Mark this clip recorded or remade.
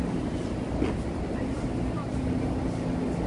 recorded